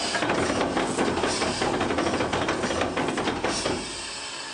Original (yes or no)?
yes